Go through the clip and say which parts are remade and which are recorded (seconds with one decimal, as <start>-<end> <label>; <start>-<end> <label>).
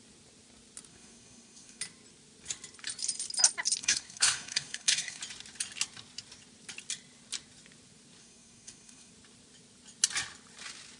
0.0-0.9 recorded; 0.9-1.8 remade; 1.8-3.8 recorded; 3.8-5.2 remade; 5.2-8.2 recorded; 8.2-9.1 remade; 9.1-11.0 recorded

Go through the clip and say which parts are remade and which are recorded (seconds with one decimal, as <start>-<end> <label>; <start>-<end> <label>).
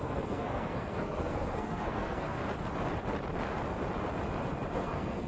0.0-2.4 remade; 2.4-4.7 recorded; 4.7-5.3 remade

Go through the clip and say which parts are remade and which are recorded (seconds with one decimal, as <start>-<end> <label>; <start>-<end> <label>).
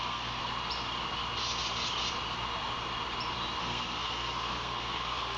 0.0-0.4 remade; 0.4-3.6 recorded; 3.6-5.4 remade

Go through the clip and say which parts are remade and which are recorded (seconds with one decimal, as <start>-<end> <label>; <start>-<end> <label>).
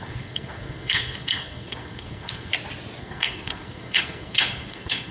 0.0-2.5 remade; 2.5-3.0 recorded; 3.0-5.1 remade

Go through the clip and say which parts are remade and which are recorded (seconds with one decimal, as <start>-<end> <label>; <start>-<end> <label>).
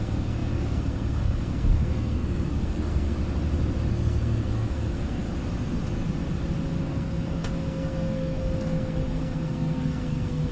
0.0-3.2 remade; 3.2-3.9 recorded; 3.9-5.2 remade; 5.2-6.8 recorded; 6.8-10.5 remade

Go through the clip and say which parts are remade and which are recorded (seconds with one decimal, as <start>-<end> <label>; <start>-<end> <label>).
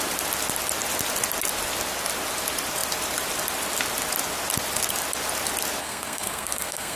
0.0-5.8 recorded; 5.8-7.0 remade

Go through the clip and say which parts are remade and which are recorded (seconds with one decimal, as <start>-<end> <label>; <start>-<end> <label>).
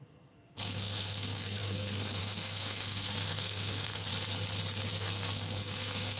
0.0-4.1 remade; 4.1-4.9 recorded; 4.9-6.2 remade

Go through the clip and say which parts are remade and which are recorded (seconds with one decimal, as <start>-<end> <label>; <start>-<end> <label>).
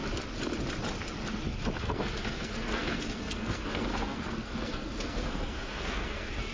0.0-1.8 recorded; 1.8-6.5 remade